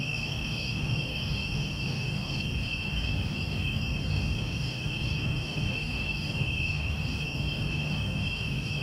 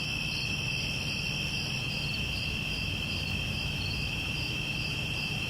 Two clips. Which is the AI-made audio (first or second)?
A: first